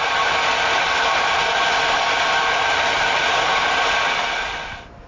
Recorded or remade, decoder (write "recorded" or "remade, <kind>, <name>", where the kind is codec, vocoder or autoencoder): recorded